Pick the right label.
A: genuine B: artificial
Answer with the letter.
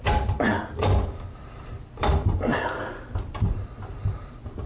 B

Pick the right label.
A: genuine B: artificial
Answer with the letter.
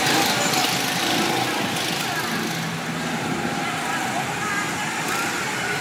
A